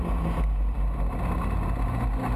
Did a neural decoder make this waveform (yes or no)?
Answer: no